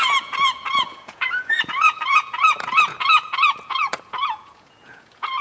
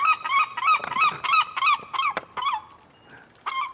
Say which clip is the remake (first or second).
first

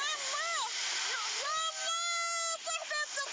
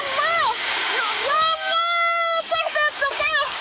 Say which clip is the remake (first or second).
second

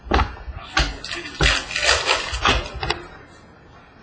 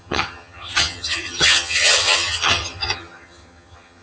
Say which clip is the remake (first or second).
second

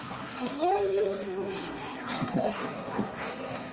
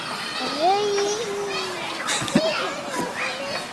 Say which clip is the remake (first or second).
first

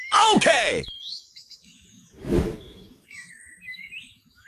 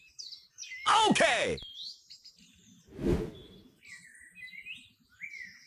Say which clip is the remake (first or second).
first